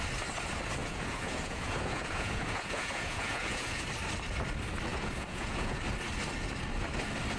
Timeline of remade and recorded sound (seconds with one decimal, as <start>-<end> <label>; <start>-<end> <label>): 0.0-0.8 recorded; 0.8-3.8 remade; 3.8-4.9 recorded; 4.9-5.8 remade; 5.8-7.4 recorded